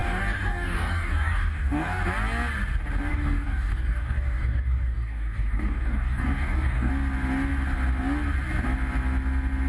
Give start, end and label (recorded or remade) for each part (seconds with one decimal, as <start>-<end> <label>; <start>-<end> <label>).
0.0-2.0 remade; 2.0-3.1 recorded; 3.1-6.9 remade; 6.9-9.7 recorded